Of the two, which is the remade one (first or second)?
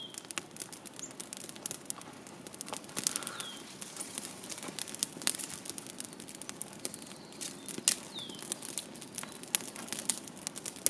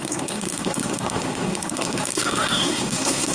second